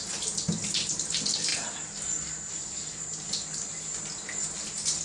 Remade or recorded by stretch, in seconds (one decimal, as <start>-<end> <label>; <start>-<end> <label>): 0.0-5.0 recorded